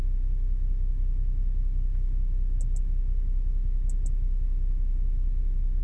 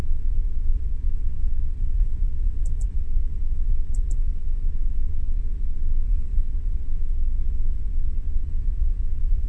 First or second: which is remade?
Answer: second